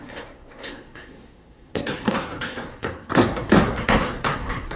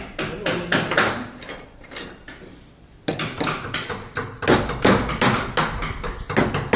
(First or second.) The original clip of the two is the second